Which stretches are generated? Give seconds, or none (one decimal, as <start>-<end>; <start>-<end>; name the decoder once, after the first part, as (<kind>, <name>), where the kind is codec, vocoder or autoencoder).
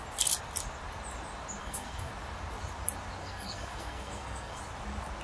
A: 1.6-2.1 (codec, SNAC); 3.2-4.6